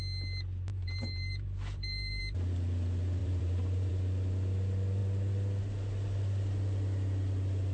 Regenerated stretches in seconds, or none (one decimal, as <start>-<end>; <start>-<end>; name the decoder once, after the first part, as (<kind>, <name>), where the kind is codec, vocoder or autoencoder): 0.7-2.2 (vocoder, BigVGAN v2); 3.2-3.9